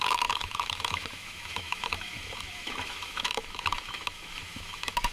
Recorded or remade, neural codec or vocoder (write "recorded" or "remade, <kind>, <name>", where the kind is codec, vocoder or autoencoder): remade, autoencoder, DAC-VAE